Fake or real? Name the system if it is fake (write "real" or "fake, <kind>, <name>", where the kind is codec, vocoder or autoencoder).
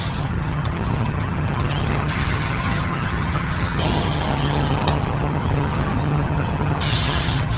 fake, vocoder, HiFi-GAN